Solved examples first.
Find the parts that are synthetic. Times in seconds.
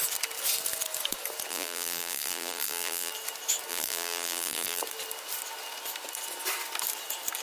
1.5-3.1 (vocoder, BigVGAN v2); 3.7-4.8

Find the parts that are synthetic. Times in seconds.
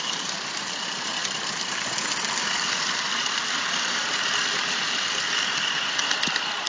1.2-3.8 (vocoder, BigVGAN v2)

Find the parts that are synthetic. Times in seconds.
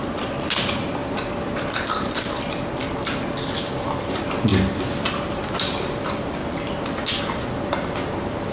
0.0-4.5 (vocoder, BigVGAN v2); 5.1-8.5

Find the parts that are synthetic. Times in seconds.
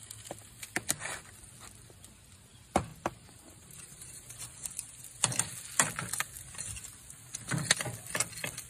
2.9-4.4 (vocoder, BigVGAN v2)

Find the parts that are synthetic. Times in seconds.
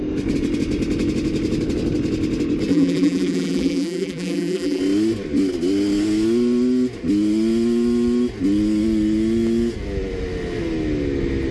2.7-4.8 (vocoder, BigVGAN v2)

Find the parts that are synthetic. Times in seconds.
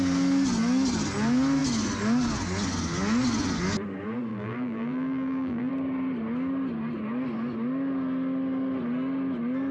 4.3-5.7 (vocoder, BigVGAN v2)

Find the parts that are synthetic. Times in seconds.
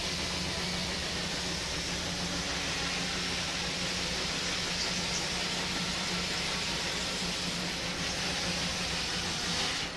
0.8-1.6 (vocoder, BigVGAN v2)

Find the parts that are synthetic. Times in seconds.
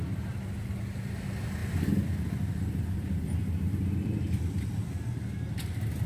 1.6-4.7 (vocoder, BigVGAN v2)